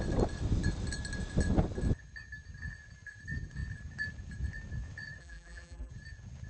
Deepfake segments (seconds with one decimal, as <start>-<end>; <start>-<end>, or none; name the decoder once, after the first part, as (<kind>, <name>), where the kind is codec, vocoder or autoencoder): 5.2-5.9 (vocoder, BigVGAN v2)